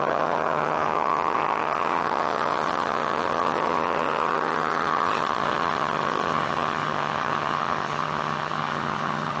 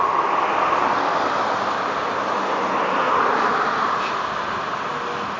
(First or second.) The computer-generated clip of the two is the first